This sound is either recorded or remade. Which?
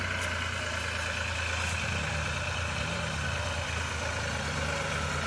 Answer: recorded